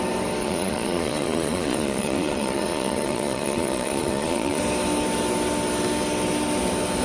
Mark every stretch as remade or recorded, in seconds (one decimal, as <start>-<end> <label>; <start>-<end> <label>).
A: 0.0-0.4 recorded; 0.4-4.6 remade; 4.6-7.0 recorded

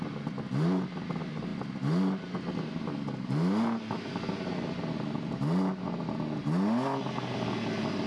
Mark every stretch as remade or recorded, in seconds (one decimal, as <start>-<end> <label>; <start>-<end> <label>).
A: 0.0-8.1 recorded

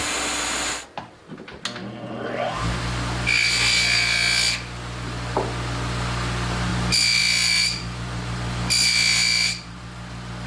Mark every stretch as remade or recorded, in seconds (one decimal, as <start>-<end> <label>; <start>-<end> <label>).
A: 0.0-10.5 recorded